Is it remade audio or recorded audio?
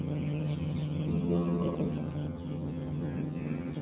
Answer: remade